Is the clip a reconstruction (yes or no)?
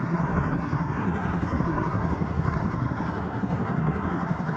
yes